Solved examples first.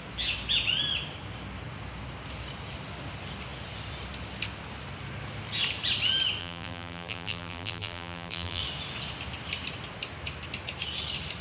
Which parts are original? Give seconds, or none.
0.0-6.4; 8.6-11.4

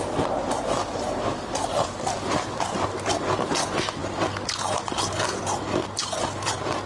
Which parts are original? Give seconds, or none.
0.0-0.4; 2.6-6.9

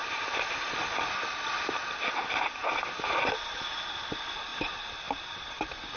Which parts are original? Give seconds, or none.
0.0-6.0

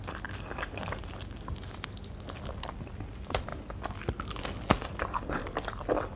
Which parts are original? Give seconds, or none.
3.5-5.0; 5.4-6.2

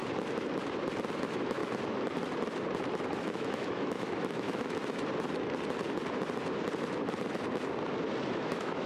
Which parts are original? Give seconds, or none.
0.0-1.2; 1.6-3.2; 4.8-8.4

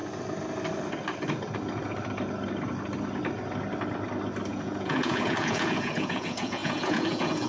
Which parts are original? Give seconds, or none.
0.0-4.5

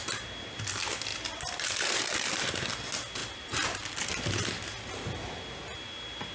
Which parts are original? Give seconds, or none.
0.0-1.1; 2.3-3.2; 4.1-6.3

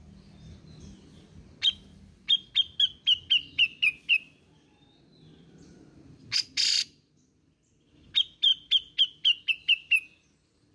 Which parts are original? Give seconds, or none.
0.0-10.7